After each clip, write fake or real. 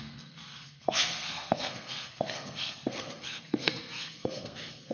fake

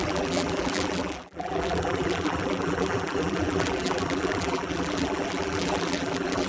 fake